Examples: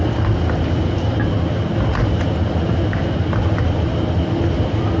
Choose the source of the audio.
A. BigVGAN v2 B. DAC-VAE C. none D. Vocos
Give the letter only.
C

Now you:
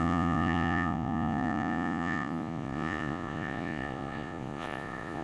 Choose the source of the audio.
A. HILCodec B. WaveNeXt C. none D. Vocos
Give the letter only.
D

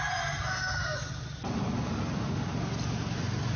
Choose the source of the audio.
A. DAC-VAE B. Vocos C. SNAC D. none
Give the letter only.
D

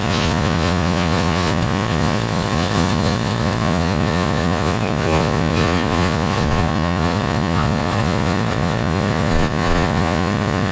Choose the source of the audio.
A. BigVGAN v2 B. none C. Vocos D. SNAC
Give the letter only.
C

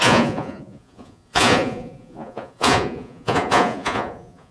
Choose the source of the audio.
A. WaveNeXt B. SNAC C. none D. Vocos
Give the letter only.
D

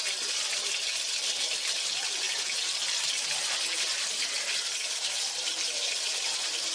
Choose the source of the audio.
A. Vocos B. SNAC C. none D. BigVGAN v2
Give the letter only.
C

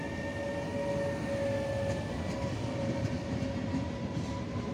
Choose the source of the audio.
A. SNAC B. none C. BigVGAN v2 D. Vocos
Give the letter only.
B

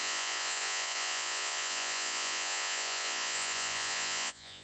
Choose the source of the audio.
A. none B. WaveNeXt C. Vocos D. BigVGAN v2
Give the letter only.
C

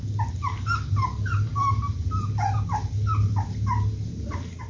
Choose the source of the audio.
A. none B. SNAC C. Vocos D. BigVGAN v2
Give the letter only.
A